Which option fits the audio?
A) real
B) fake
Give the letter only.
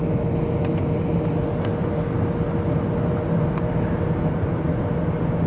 A